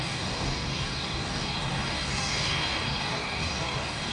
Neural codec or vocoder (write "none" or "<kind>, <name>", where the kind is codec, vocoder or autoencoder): codec, DAC